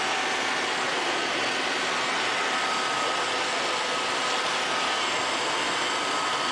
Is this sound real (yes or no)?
yes